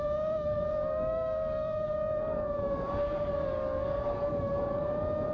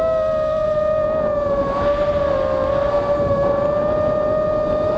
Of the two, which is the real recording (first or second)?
second